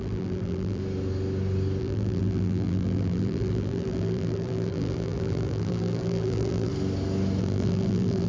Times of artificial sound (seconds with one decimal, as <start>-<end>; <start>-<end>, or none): 0.0-0.8; 1.8-6.7; 7.4-8.3